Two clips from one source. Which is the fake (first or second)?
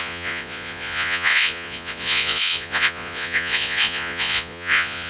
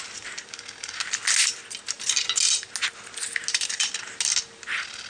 first